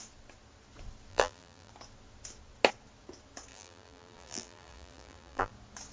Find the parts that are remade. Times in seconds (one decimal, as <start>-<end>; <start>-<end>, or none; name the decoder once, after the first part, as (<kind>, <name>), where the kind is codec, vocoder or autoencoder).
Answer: 1.1-1.7 (vocoder, BigVGAN v2); 3.5-5.5